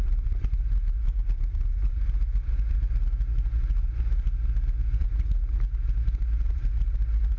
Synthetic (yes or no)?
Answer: no